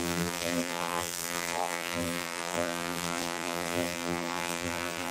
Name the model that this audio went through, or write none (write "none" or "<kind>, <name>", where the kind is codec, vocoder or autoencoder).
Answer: vocoder, BigVGAN v2